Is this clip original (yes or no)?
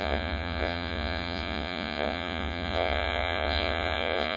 no